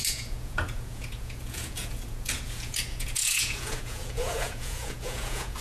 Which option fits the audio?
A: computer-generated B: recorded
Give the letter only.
A